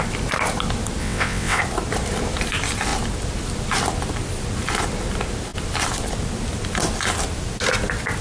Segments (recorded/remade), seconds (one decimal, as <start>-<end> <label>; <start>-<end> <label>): 0.0-1.0 recorded; 1.0-1.6 remade; 1.6-8.2 recorded